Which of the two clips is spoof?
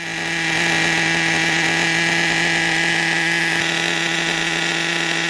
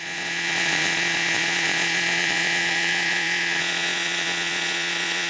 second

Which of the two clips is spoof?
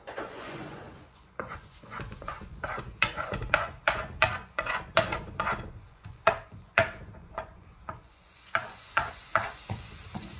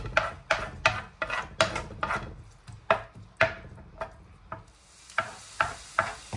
first